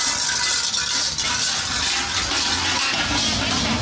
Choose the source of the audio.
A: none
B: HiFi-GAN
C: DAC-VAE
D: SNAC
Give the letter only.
A